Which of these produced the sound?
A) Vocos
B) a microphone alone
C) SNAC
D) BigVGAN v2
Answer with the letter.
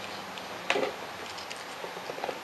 B